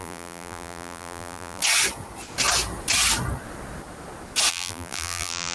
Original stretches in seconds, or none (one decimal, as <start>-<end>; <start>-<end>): 1.6-4.5